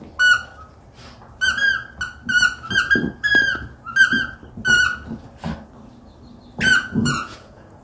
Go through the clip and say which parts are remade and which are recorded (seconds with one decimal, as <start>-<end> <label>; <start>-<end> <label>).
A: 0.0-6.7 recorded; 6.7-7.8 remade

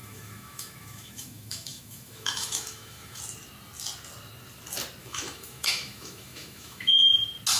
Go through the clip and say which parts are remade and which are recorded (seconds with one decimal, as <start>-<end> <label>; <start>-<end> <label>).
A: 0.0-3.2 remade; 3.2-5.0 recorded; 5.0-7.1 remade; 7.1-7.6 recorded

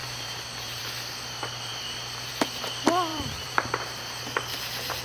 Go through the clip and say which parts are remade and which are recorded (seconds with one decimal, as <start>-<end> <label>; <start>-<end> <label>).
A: 0.0-0.8 remade; 0.8-3.1 recorded; 3.1-5.0 remade